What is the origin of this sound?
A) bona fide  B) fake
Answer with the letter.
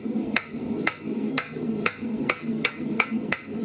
B